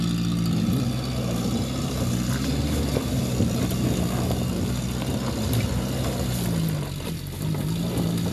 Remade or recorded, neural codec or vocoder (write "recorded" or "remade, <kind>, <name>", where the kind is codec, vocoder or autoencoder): recorded